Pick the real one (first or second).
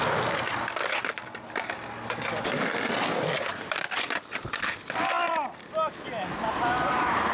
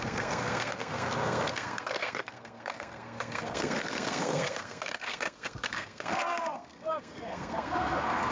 first